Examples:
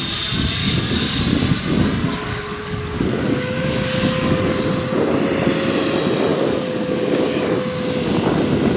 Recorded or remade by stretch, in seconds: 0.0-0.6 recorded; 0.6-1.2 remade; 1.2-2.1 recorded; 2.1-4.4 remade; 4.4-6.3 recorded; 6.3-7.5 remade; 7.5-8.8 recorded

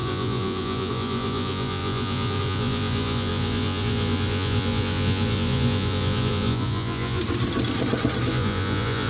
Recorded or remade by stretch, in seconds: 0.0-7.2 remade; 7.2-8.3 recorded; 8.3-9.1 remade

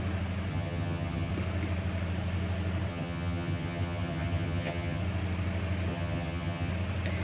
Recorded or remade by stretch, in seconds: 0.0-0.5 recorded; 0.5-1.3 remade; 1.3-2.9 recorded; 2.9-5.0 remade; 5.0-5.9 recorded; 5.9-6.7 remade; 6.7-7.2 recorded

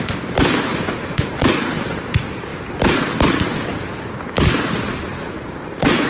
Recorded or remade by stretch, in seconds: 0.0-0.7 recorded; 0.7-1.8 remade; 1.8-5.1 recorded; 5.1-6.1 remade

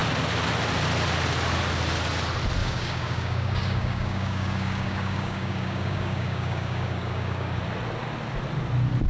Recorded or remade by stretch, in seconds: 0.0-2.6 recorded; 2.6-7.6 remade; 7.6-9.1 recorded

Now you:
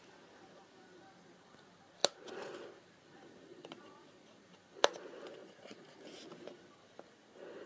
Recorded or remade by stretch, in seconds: 0.0-3.5 recorded; 3.5-4.3 remade; 4.3-5.4 recorded; 5.4-6.0 remade; 6.0-7.7 recorded

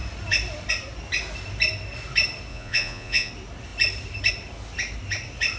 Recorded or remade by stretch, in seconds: 0.0-2.5 recorded; 2.5-3.3 remade; 3.3-5.6 recorded

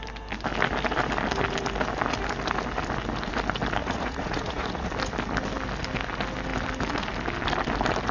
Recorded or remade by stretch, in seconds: 0.0-3.8 recorded; 3.8-4.9 remade; 4.9-8.1 recorded